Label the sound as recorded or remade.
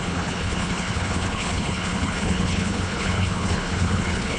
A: remade